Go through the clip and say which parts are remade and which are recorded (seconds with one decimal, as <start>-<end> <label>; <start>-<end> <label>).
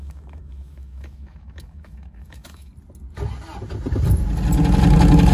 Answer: 0.0-2.7 remade; 2.7-5.3 recorded